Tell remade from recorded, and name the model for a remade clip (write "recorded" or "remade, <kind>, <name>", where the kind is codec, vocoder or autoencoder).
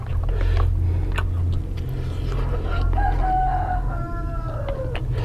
recorded